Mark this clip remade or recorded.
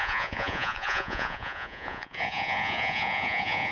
remade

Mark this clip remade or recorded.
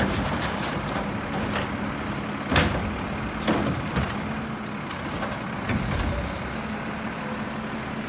recorded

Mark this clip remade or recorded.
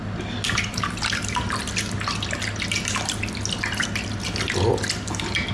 recorded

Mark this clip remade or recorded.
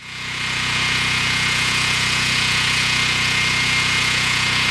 remade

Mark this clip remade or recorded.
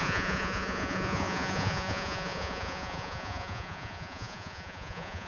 remade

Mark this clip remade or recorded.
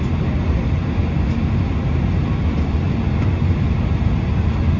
recorded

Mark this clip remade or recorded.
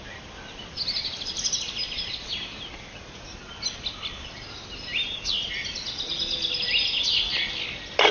recorded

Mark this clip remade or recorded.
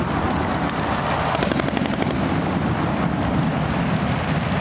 recorded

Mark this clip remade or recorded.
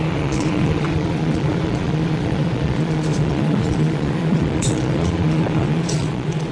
remade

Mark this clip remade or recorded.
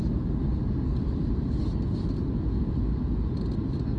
recorded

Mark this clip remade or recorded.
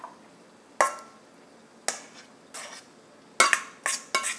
recorded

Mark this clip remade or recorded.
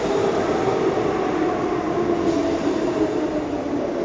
recorded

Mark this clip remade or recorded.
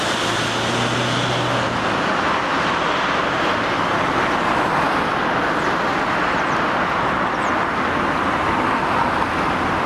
recorded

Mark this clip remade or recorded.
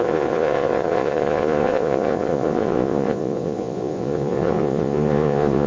remade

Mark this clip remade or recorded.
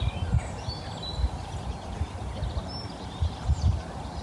recorded